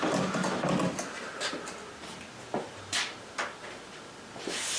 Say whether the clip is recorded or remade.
recorded